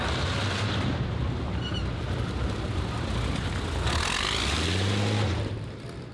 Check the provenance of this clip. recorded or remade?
recorded